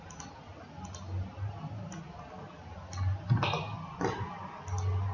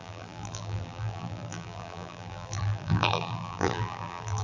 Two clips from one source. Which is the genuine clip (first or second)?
first